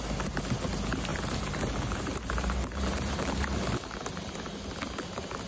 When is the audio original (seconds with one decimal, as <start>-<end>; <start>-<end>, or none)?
0.0-1.1; 4.4-5.5